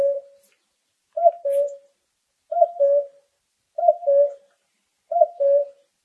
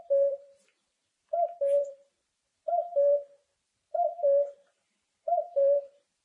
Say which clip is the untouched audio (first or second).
first